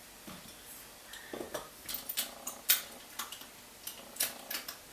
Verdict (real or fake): real